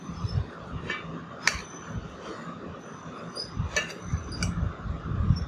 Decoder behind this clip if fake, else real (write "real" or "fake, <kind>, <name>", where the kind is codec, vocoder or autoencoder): real